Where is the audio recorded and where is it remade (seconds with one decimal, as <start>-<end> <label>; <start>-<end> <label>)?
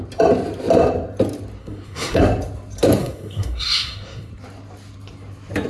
0.0-1.6 recorded; 1.6-2.2 remade; 2.2-3.0 recorded; 3.0-4.3 remade; 4.3-5.7 recorded